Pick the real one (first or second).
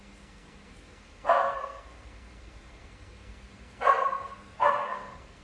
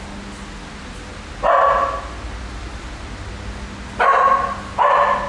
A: second